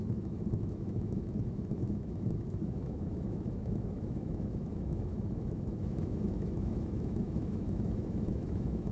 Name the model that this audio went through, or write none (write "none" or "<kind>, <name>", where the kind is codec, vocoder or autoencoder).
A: autoencoder, DAC-VAE